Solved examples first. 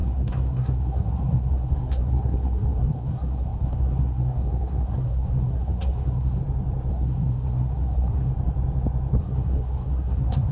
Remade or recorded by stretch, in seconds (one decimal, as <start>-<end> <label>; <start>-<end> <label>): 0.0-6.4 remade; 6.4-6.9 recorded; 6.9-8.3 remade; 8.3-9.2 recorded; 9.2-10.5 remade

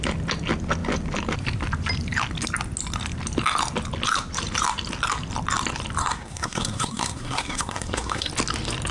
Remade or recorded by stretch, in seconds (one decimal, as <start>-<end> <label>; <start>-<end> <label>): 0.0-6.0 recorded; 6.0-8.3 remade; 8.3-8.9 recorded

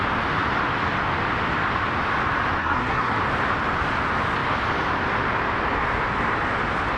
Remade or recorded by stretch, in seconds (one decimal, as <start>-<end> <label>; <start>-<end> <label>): 0.0-2.6 recorded; 2.6-3.2 remade; 3.2-7.0 recorded

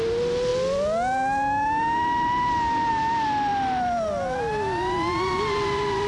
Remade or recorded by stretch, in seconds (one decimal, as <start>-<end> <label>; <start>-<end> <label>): 0.0-6.1 recorded